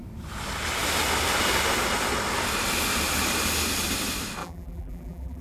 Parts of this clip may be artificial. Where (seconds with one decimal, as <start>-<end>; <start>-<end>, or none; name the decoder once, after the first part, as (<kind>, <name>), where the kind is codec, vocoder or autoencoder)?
4.4-5.4 (vocoder, BigVGAN v2)